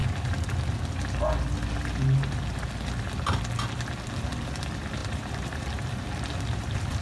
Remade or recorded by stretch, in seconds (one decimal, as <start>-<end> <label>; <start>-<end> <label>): 0.0-4.2 recorded; 4.2-7.0 remade